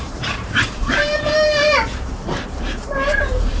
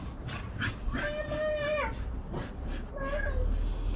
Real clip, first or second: second